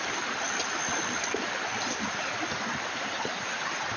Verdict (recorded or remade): recorded